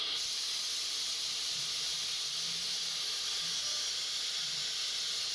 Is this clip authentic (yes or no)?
yes